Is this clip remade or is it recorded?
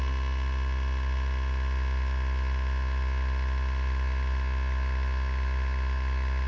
recorded